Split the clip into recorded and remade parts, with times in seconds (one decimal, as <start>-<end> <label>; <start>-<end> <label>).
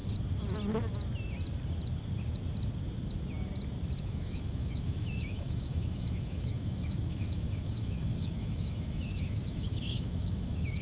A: 0.0-4.0 recorded; 4.0-10.8 remade